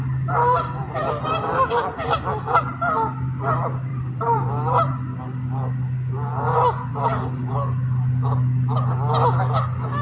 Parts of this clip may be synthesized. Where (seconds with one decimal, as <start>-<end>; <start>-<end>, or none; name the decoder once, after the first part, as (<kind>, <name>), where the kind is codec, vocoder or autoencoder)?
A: 0.8-1.4 (vocoder, BigVGAN v2); 3.9-4.9; 6.9-7.5